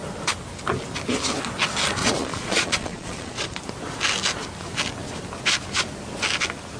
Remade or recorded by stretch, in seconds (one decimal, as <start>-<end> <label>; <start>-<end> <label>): 0.0-2.0 recorded; 2.0-3.6 remade; 3.6-6.8 recorded

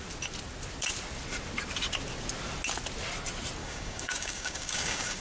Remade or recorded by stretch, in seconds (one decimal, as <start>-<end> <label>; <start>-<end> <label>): 0.0-3.6 recorded; 3.6-5.2 remade

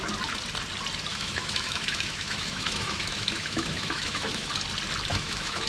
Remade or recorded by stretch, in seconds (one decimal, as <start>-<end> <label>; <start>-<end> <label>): 0.0-1.1 recorded; 1.1-4.5 remade; 4.5-5.1 recorded; 5.1-5.7 remade

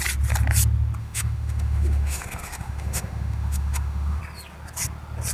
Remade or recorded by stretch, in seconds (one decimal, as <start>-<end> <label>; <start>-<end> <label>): 0.0-1.0 recorded; 1.0-4.2 remade; 4.2-5.3 recorded

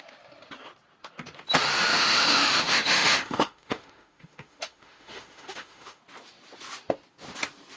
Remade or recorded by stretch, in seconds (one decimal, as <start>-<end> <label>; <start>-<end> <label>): 0.0-1.9 recorded; 1.9-6.0 remade; 6.0-7.8 recorded

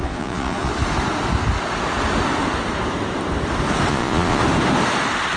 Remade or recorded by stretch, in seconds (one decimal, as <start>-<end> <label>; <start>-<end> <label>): 0.0-0.7 remade; 0.7-3.9 recorded; 3.9-4.4 remade; 4.4-5.4 recorded